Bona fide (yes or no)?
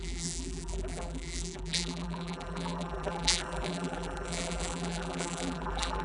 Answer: no